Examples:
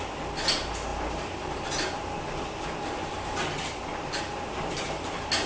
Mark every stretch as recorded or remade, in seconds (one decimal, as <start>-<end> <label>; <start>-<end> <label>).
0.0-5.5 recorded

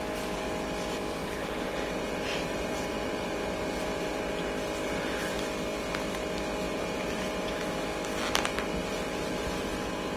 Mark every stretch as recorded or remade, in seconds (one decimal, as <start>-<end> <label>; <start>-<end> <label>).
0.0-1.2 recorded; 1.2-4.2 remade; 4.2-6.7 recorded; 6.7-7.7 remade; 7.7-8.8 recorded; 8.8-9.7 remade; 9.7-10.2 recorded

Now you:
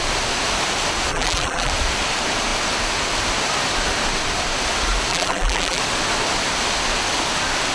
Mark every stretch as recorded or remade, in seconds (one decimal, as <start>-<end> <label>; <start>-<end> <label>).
0.0-1.1 recorded; 1.1-1.7 remade; 1.7-5.1 recorded; 5.1-5.8 remade; 5.8-7.7 recorded